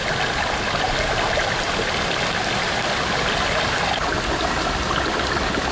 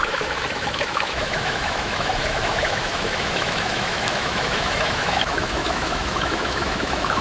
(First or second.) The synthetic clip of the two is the second